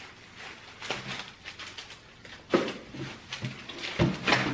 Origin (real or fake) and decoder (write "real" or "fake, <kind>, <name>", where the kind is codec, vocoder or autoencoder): real